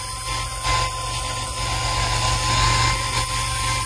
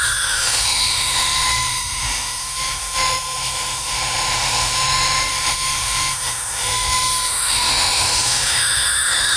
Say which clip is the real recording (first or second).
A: first